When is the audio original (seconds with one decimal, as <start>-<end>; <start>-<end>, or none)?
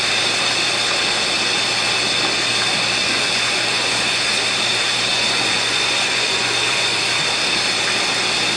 0.0-3.0; 4.2-5.1; 7.0-8.6